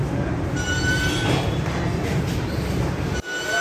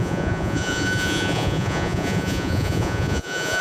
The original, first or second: first